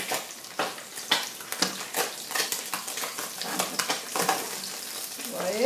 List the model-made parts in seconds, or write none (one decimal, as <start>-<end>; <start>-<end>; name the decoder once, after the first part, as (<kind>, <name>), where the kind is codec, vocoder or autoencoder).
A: none